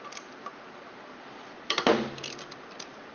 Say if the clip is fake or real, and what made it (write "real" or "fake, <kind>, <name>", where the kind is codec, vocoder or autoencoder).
real